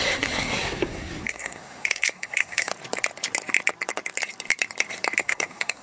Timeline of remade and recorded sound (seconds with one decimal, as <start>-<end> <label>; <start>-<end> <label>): 0.0-2.7 remade; 2.7-5.2 recorded; 5.2-5.8 remade